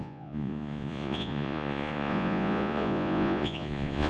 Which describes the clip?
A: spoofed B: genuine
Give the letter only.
A